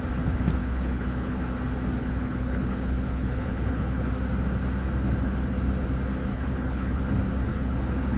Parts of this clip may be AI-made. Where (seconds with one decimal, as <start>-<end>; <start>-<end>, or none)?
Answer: 0.6-1.4; 2.0-4.1; 6.3-7.0; 7.5-8.2